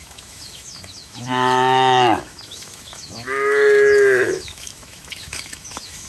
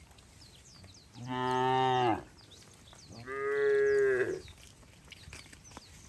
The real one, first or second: second